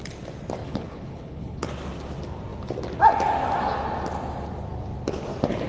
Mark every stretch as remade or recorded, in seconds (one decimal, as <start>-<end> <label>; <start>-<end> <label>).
0.0-0.6 recorded; 0.6-1.7 remade; 1.7-5.7 recorded